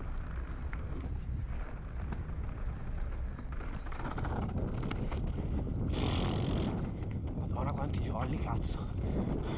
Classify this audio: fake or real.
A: real